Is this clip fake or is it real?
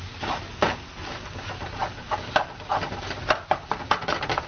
real